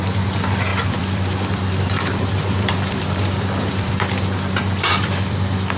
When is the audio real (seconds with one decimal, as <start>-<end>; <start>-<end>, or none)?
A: 0.0-0.7; 4.2-4.9